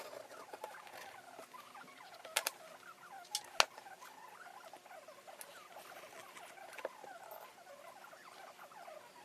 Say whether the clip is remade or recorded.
recorded